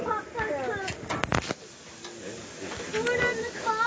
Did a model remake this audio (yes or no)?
no